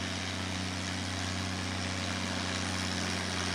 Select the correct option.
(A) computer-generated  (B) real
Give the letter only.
B